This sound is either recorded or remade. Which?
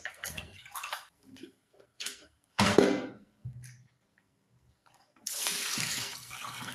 remade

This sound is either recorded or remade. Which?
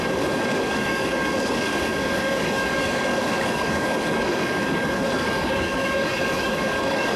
remade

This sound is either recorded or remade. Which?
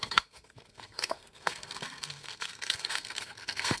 remade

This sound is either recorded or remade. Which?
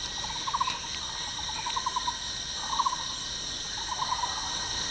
recorded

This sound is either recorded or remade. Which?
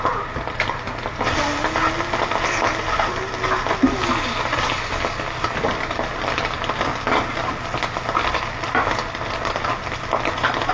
recorded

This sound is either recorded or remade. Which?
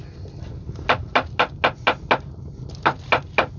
recorded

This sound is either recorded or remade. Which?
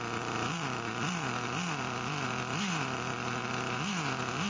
remade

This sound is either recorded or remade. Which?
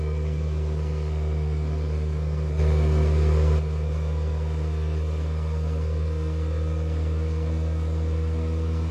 remade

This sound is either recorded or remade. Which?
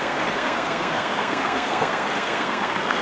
remade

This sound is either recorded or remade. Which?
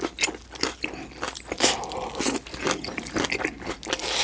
recorded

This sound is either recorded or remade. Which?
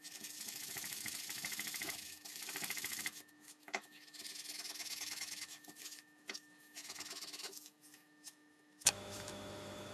remade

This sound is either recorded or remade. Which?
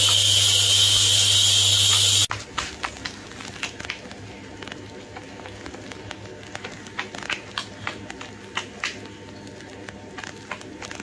recorded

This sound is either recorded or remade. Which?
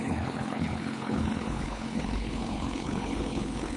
remade